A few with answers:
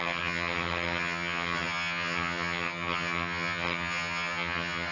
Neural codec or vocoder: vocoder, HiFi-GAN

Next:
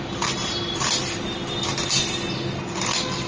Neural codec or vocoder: none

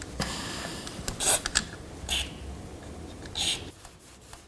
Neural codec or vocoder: none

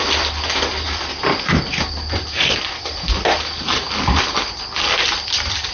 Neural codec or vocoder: none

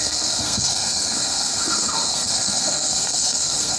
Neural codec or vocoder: codec, SNAC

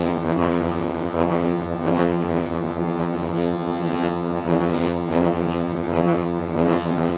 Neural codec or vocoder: vocoder, HiFi-GAN